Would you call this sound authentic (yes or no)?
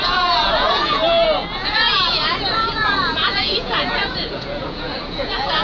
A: no